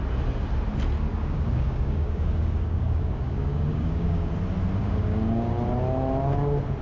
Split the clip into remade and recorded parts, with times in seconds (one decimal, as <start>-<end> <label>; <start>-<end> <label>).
0.0-1.1 recorded; 1.1-4.3 remade; 4.3-4.8 recorded; 4.8-5.5 remade; 5.5-6.8 recorded